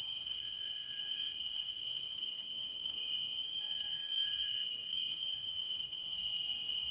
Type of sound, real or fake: fake